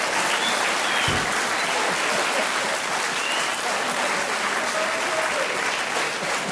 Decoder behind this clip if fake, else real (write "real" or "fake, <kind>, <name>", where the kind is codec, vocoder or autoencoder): real